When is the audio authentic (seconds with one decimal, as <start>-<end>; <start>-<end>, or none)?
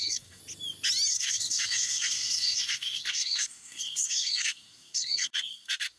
0.4-1.1